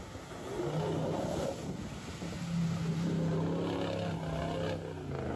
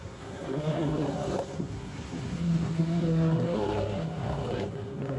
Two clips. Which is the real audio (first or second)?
first